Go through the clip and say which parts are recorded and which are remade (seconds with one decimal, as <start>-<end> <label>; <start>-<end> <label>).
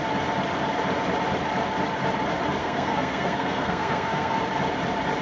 0.0-2.6 recorded; 2.6-4.4 remade; 4.4-5.2 recorded